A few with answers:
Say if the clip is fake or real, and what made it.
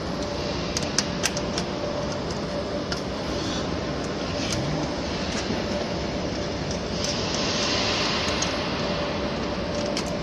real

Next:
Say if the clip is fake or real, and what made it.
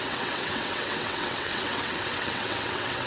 fake, vocoder, WaveNeXt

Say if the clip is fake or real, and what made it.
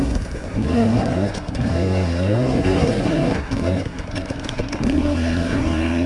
fake, codec, SNAC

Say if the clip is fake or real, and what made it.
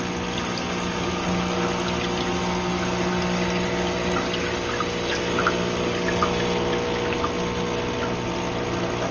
real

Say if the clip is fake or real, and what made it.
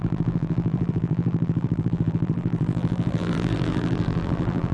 fake, vocoder, BigVGAN v2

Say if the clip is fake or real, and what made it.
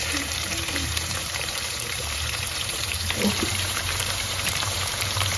fake, vocoder, BigVGAN v2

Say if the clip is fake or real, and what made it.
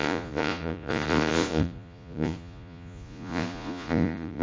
fake, vocoder, Vocos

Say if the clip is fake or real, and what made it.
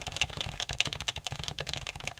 fake, autoencoder, DAC-VAE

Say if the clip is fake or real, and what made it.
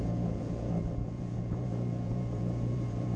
fake, vocoder, Vocos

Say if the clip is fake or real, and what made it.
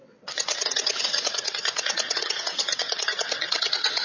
fake, vocoder, WaveNeXt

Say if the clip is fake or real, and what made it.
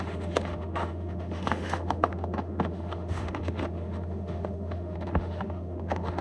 fake, autoencoder, DAC-VAE